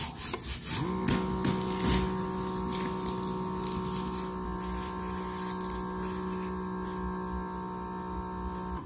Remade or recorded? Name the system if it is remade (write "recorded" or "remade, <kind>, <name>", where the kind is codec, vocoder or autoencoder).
recorded